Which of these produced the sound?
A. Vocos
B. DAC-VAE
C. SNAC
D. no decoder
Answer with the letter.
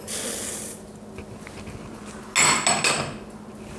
D